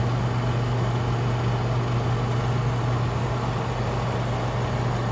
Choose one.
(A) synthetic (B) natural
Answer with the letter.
B